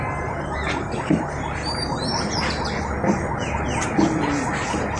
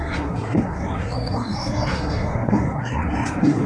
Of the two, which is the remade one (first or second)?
second